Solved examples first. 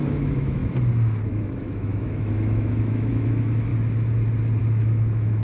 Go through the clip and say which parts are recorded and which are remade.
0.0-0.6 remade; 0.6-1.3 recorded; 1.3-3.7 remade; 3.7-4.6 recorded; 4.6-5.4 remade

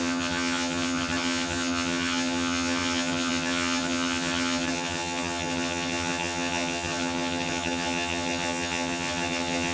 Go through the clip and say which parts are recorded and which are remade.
0.0-9.7 remade

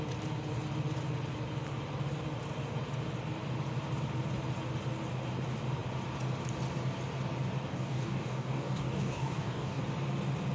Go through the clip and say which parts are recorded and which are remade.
0.0-7.7 recorded; 7.7-9.8 remade; 9.8-10.5 recorded

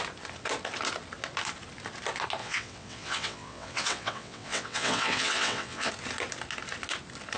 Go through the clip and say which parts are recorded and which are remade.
0.0-2.4 recorded; 2.4-5.9 remade; 5.9-7.4 recorded

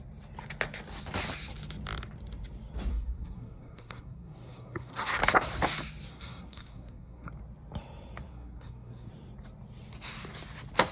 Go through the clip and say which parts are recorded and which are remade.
0.0-2.9 recorded; 2.9-5.2 remade; 5.2-6.1 recorded; 6.1-7.3 remade; 7.3-8.3 recorded; 8.3-9.1 remade; 9.1-10.9 recorded